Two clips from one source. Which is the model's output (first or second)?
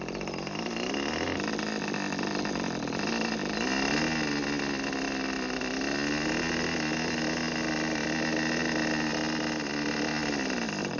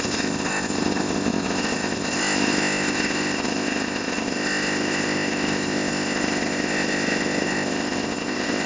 second